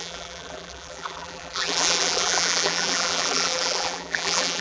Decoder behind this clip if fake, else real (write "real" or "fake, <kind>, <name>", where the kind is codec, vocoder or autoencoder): fake, vocoder, BigVGAN v2